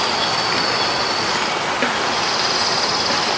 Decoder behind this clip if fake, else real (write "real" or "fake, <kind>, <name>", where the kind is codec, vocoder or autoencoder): real